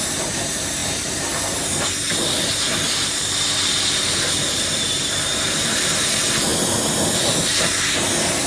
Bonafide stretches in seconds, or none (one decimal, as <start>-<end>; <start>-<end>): none